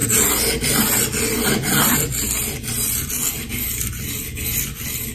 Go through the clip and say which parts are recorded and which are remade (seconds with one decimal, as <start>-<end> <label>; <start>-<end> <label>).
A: 0.0-5.1 recorded